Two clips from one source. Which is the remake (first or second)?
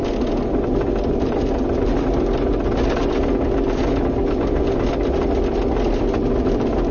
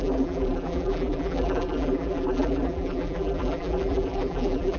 second